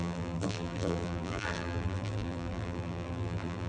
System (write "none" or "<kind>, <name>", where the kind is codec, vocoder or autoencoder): vocoder, BigVGAN v2